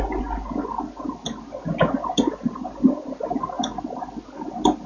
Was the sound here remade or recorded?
recorded